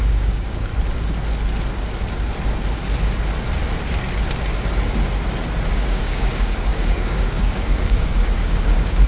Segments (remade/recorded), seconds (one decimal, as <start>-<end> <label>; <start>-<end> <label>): 0.0-0.7 remade; 0.7-5.7 recorded; 5.7-9.1 remade